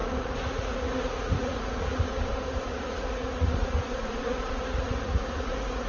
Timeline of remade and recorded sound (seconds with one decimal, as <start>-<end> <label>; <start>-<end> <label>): 0.0-2.0 remade; 2.0-2.7 recorded; 2.7-5.9 remade